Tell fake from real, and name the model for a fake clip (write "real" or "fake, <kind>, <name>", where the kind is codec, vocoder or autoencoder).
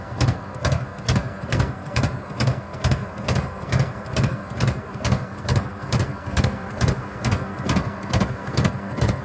fake, codec, SNAC